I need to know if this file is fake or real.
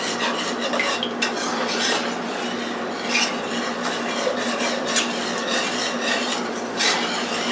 real